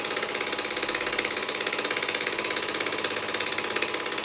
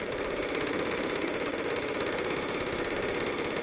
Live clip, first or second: first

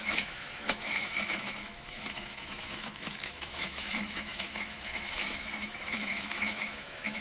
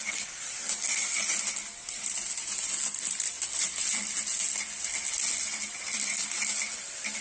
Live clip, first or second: second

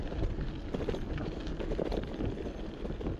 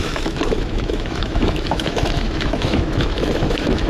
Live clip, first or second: first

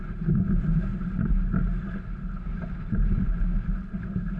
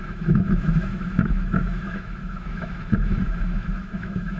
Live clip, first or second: first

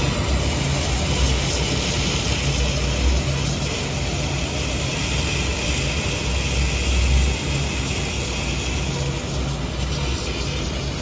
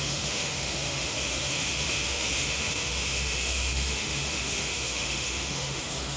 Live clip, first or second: first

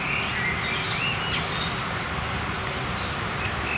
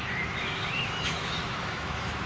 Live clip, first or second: first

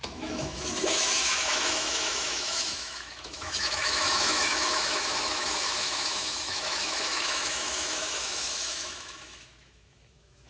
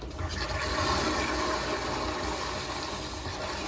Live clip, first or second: second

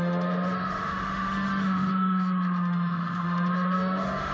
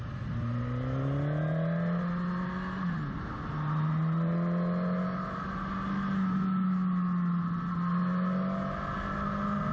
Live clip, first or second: second